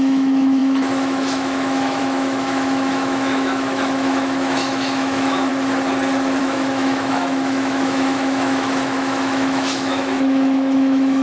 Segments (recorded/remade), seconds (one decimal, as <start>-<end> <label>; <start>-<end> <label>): 0.0-5.5 remade; 5.5-6.4 recorded; 6.4-11.2 remade